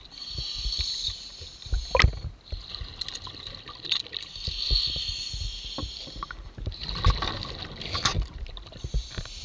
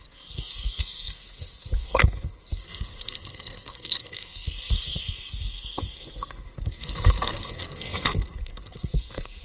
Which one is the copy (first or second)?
second